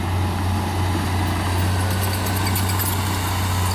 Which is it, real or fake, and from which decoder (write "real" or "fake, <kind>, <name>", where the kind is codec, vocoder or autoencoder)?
real